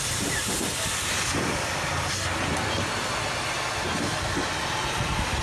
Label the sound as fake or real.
real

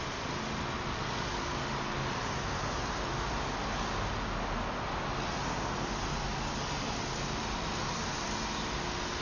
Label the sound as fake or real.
real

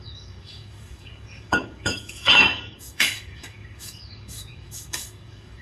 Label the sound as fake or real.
fake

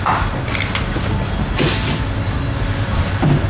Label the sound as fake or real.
real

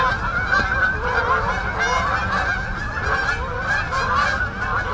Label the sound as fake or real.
real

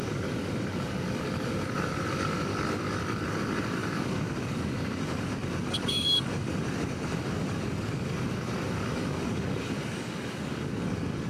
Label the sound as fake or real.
fake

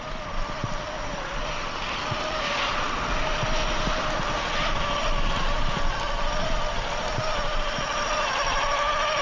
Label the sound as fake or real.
real